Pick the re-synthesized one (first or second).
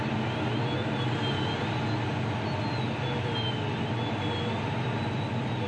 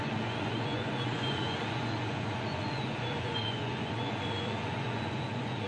second